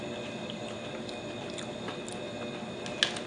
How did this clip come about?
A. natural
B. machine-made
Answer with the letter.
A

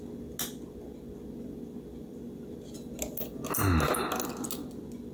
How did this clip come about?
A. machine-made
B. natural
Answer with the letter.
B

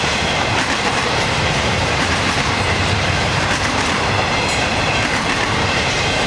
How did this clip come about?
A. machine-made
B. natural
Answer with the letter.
A